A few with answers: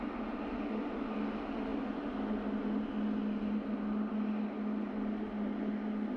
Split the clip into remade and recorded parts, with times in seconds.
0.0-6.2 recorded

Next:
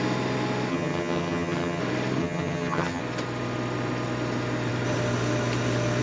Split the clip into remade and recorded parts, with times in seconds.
0.0-0.7 recorded; 0.7-1.8 remade; 1.8-2.2 recorded; 2.2-3.0 remade; 3.0-6.0 recorded

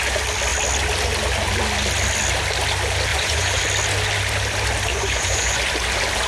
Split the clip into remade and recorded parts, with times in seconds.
0.0-3.1 recorded; 3.1-3.6 remade; 3.6-4.9 recorded; 4.9-5.6 remade; 5.6-6.3 recorded

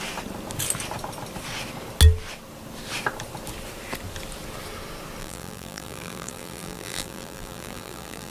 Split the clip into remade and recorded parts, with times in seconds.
0.0-5.2 recorded; 5.2-8.3 remade

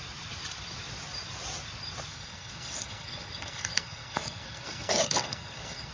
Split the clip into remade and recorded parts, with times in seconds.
0.0-2.1 recorded; 2.1-5.9 remade

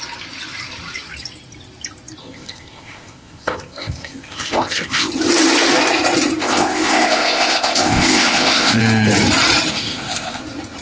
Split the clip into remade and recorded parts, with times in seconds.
0.0-2.2 recorded; 2.2-5.1 remade; 5.1-6.4 recorded; 6.4-8.8 remade; 8.8-9.7 recorded; 9.7-10.4 remade; 10.4-10.8 recorded